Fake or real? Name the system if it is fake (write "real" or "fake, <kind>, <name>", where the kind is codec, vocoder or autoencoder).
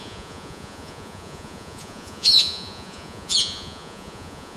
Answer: fake, vocoder, Vocos